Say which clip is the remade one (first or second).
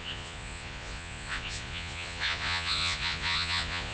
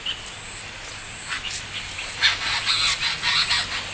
first